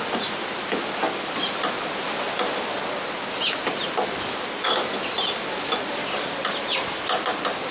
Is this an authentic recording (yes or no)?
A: yes